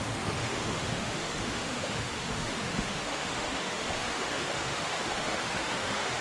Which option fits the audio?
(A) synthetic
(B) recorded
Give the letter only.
A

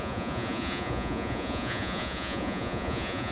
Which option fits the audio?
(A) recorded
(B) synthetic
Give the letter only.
B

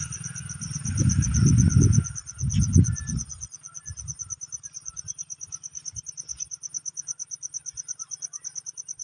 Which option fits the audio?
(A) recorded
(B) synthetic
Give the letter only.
A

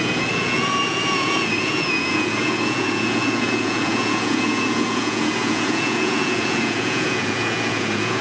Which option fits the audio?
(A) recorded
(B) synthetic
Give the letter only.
B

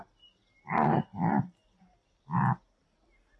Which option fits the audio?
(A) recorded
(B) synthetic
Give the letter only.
A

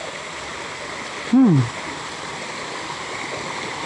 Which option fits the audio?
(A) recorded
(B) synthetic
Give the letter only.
A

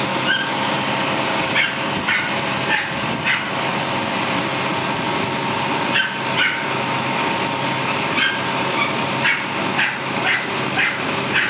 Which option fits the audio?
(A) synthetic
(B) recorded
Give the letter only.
B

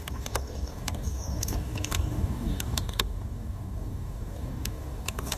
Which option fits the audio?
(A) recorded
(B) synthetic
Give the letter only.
B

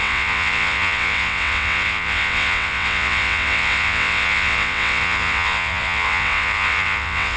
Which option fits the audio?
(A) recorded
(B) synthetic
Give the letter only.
B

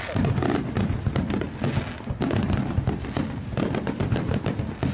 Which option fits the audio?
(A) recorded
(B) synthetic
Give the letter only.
A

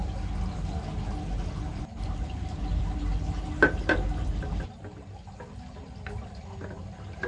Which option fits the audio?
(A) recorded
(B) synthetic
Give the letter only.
A